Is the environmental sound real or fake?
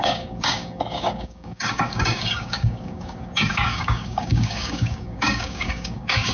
fake